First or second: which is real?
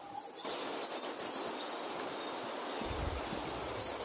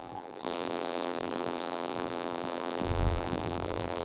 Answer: first